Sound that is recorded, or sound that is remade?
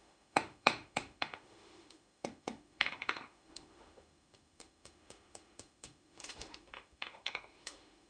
remade